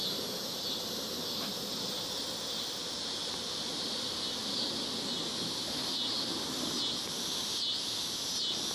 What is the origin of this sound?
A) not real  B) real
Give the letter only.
B